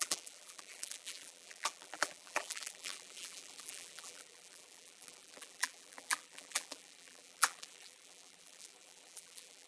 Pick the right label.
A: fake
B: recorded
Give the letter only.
A